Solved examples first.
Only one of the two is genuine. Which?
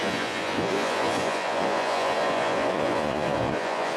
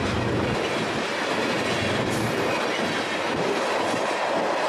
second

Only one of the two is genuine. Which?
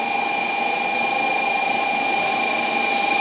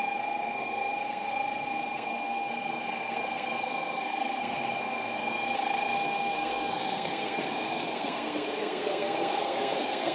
first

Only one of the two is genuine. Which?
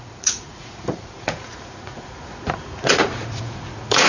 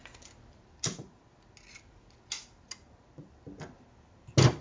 second